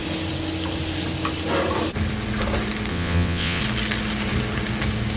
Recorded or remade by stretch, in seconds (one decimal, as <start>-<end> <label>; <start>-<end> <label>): 0.0-2.9 recorded; 2.9-3.6 remade; 3.6-5.2 recorded